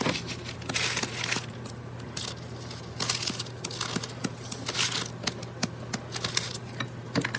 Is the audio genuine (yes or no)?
yes